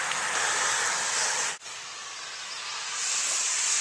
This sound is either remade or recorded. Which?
recorded